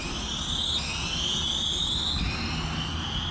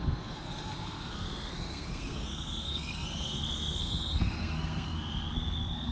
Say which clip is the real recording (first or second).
first